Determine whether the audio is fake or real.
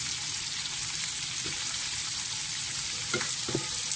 real